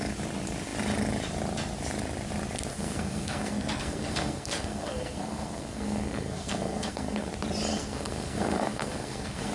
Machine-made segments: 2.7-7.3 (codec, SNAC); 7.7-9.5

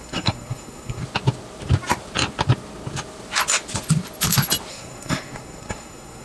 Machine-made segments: 0.0-1.0 (codec, SNAC); 4.7-6.2

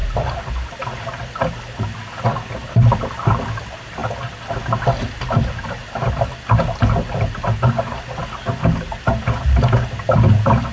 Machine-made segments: none

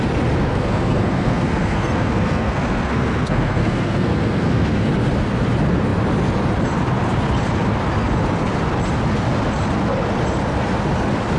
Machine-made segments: 0.5-4.9 (codec, SNAC)

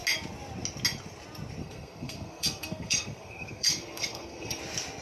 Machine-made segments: 1.6-4.6 (codec, SNAC)

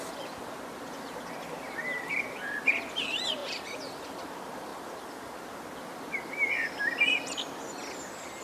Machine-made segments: none

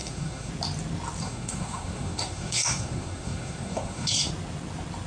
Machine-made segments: 0.0-0.5 (codec, SNAC); 1.2-4.3

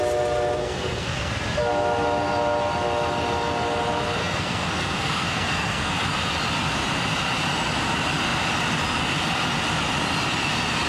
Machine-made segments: 0.6-1.3 (codec, SNAC); 4.2-5.9